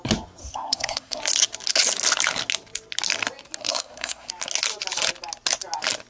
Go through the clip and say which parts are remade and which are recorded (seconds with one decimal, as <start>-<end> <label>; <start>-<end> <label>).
0.0-0.4 recorded; 0.4-1.2 remade; 1.2-3.6 recorded; 3.6-4.3 remade; 4.3-6.1 recorded